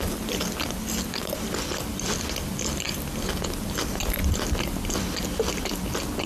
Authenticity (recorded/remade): recorded